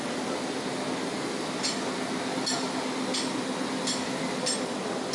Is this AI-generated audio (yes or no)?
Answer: no